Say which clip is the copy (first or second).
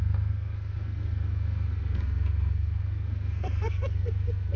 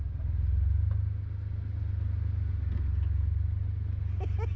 first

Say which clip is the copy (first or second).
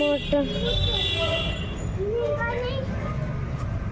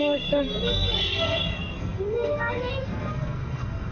second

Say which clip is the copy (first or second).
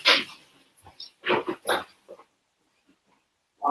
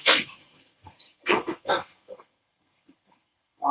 second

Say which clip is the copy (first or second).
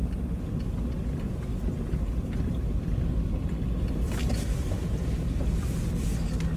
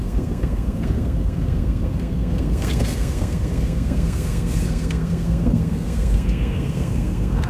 second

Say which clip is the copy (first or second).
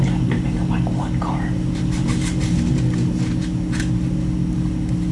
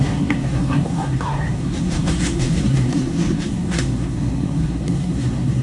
second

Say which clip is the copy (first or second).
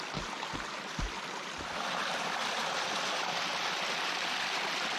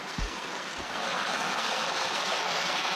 second